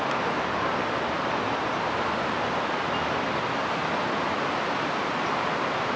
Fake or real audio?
real